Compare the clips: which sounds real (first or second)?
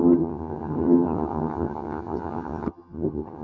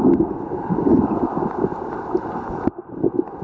second